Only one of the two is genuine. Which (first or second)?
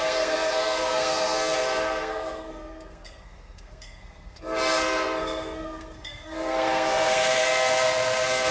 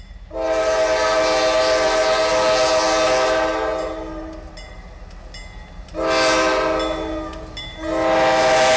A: second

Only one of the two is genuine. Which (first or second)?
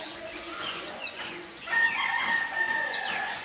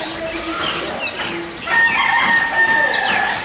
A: second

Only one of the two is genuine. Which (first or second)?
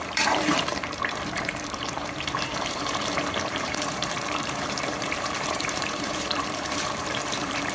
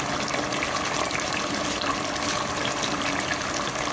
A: second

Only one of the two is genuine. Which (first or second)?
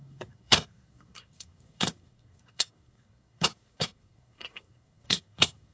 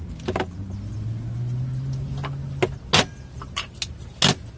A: second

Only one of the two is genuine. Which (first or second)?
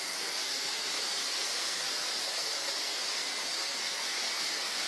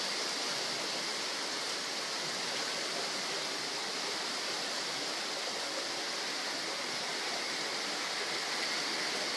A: second